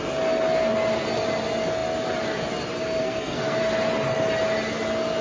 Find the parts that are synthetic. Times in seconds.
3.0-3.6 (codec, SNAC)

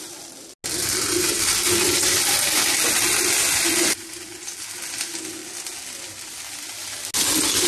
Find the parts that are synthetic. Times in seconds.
none

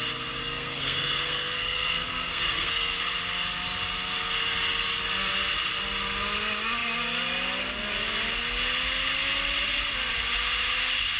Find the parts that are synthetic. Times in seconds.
0.4-3.0 (codec, SNAC)

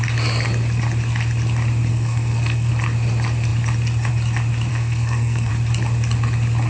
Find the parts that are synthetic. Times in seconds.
1.9-2.7 (codec, SNAC); 4.7-5.5

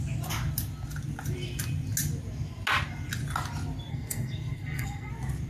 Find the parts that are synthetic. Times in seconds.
3.9-5.1 (codec, SNAC)

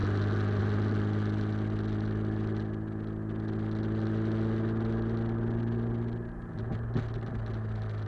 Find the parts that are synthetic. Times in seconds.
none